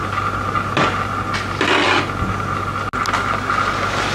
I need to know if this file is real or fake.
real